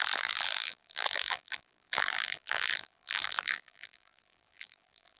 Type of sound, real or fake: fake